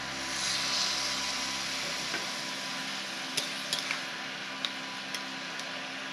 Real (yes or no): yes